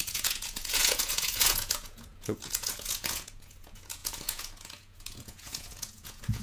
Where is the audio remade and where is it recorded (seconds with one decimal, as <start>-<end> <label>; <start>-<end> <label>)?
0.0-6.4 remade